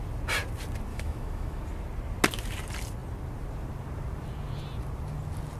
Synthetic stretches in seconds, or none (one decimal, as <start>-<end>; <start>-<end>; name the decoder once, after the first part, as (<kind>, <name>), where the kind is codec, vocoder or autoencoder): 0.9-1.6 (autoencoder, DAC-VAE)